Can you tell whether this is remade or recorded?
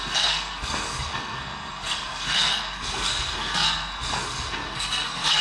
remade